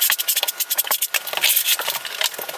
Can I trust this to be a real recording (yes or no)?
yes